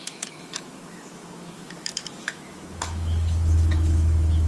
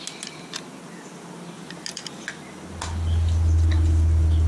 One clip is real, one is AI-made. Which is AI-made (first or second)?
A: first